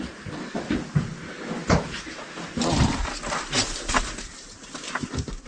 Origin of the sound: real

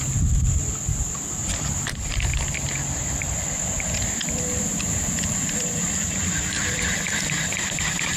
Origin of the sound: fake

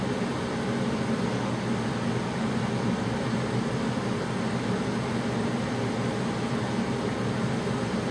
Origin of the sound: real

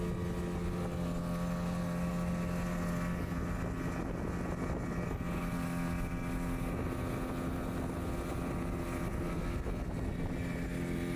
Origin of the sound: real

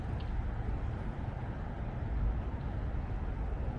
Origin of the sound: real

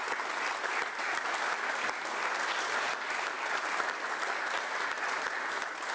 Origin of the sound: real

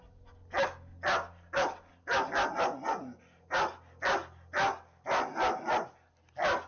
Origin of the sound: real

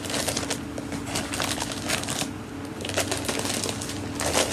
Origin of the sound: real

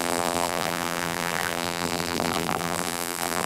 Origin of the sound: fake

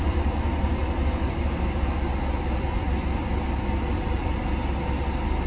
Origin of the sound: real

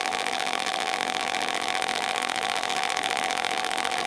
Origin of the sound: fake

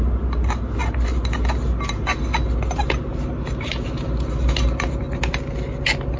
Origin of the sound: real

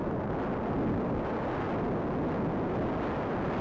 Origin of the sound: real